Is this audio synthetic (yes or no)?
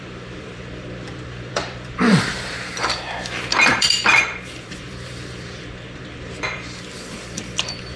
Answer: yes